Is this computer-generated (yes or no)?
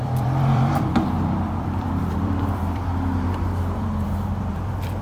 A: yes